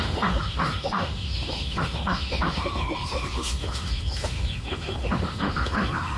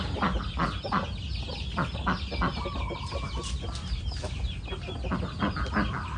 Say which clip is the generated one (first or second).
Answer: first